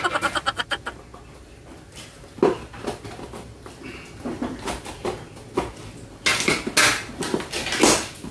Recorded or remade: recorded